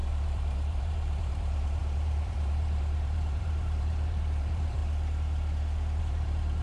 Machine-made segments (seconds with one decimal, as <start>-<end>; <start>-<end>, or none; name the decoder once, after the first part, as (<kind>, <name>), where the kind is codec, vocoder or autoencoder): 0.0-4.8 (vocoder, BigVGAN v2); 6.0-6.6